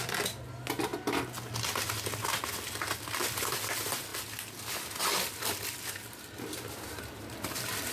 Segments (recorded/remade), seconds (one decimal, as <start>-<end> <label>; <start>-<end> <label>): 0.0-7.9 recorded